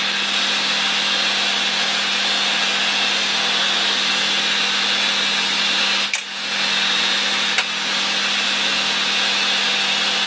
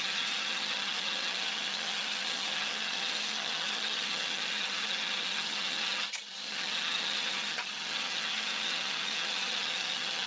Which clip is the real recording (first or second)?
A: first